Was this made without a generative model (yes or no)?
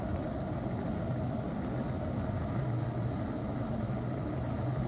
yes